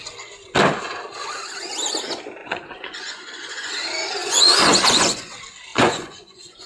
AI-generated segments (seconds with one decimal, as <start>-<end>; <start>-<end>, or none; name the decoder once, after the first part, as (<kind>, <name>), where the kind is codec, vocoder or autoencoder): 2.4-3.7 (vocoder, Vocos); 4.2-5.3; 5.7-6.7